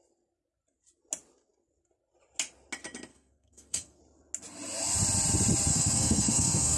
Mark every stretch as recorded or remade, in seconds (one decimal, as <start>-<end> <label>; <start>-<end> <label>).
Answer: 0.0-3.1 recorded; 3.1-4.0 remade; 4.0-5.7 recorded; 5.7-6.8 remade